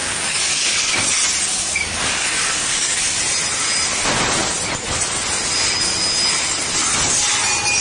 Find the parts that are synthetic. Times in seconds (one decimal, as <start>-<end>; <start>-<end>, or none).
0.0-1.0; 1.5-3.2